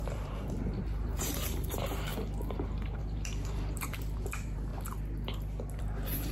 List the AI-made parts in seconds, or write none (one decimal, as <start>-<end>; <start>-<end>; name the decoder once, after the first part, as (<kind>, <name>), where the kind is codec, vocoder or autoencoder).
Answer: 0.0-2.1 (vocoder, BigVGAN v2); 3.0-4.7; 5.8-6.3